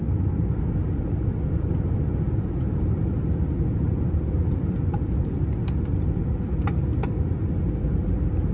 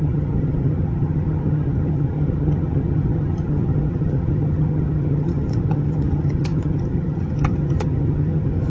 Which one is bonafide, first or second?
first